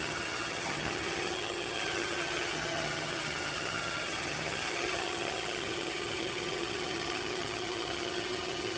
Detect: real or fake fake